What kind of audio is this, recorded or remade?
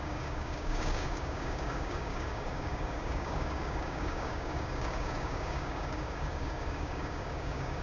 remade